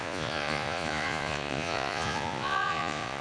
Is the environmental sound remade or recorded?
remade